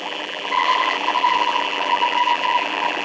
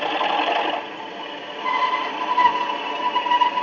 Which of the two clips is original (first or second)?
second